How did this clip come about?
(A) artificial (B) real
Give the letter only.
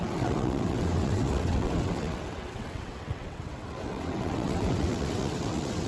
A